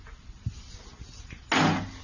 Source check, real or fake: real